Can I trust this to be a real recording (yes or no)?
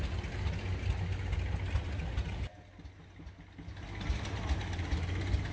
yes